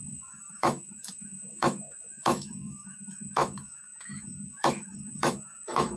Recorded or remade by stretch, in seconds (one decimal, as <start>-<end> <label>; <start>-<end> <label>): 0.0-6.0 remade